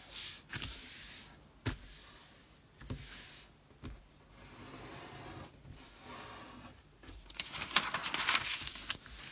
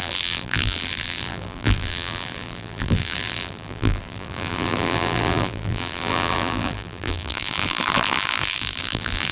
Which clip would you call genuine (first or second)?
first